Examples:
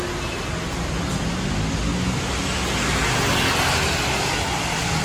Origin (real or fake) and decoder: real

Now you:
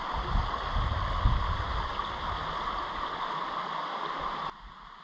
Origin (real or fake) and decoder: real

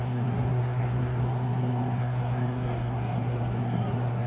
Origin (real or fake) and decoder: fake, codec, SNAC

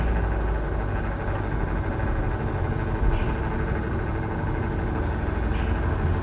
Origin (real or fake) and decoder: real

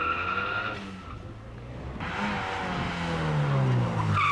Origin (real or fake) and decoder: real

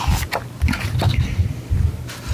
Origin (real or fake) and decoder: real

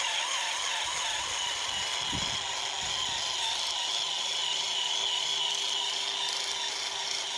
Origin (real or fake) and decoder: real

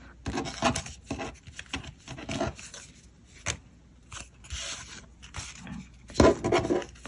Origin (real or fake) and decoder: real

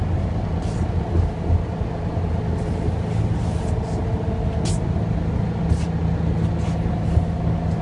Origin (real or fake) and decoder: real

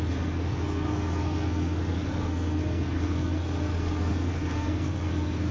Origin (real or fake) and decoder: fake, codec, SNAC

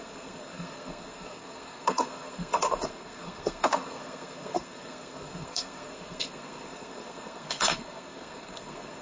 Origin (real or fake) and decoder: fake, codec, SNAC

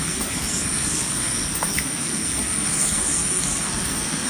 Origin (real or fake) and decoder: fake, codec, SNAC